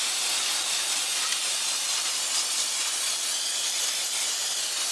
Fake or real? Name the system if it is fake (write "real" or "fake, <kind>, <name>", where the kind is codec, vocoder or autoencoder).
real